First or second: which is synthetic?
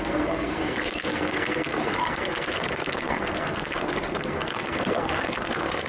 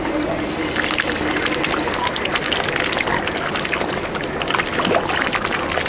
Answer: first